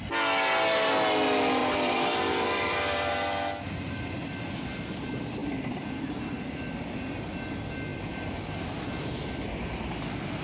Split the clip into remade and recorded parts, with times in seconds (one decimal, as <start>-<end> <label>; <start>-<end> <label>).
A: 0.0-1.6 recorded; 1.6-3.1 remade; 3.1-5.4 recorded; 5.4-6.3 remade; 6.3-10.4 recorded